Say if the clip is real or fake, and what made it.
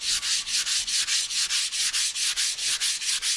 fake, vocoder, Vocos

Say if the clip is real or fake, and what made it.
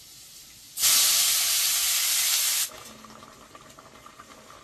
real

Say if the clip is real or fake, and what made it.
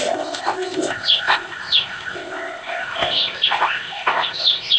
fake, codec, ZipCodec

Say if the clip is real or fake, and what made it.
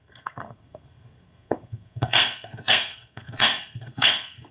fake, codec, SNAC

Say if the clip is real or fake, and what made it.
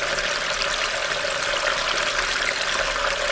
real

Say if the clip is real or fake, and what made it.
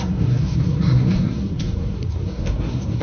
fake, codec, SNAC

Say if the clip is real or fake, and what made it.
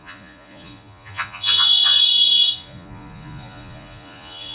fake, vocoder, Vocos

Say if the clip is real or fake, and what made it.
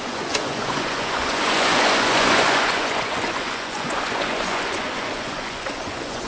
fake, vocoder, Vocos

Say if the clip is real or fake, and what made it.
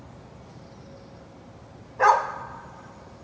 real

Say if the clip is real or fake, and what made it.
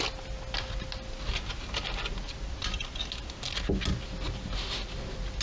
real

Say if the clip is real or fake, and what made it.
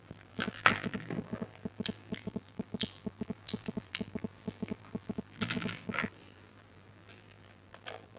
fake, vocoder, BigVGAN v2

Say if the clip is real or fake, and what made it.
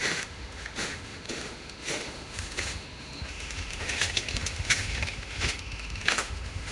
fake, autoencoder, DAC-VAE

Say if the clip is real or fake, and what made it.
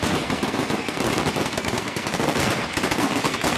fake, codec, SNAC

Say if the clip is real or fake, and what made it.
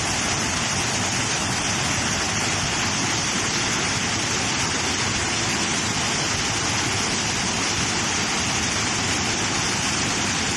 real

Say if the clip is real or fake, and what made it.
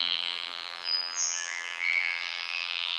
fake, vocoder, BigVGAN v2